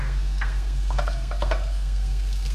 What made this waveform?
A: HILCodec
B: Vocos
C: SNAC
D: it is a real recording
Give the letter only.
C